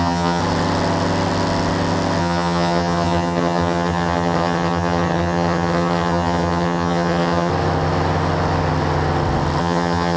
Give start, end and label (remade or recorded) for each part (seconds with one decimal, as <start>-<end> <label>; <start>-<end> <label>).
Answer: 0.0-0.4 remade; 0.4-2.2 recorded; 2.2-7.5 remade; 7.5-9.6 recorded; 9.6-10.2 remade

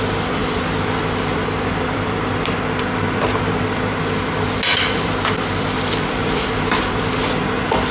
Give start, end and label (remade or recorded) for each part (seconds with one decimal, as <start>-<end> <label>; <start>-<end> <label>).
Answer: 0.0-0.4 recorded; 0.4-2.2 remade; 2.2-4.7 recorded; 4.7-7.2 remade; 7.2-7.9 recorded

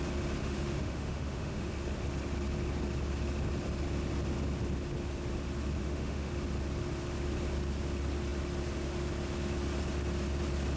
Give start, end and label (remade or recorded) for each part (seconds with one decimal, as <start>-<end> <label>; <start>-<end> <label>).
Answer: 0.0-0.4 recorded; 0.4-1.7 remade; 1.7-5.8 recorded; 5.8-6.3 remade; 6.3-10.8 recorded

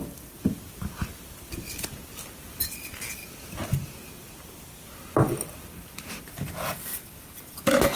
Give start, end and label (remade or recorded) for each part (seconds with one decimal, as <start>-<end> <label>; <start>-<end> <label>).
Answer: 0.0-8.0 recorded

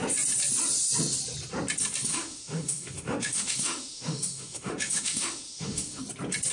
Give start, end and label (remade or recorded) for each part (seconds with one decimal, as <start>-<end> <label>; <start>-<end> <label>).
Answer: 0.0-2.1 recorded; 2.1-6.0 remade; 6.0-6.5 recorded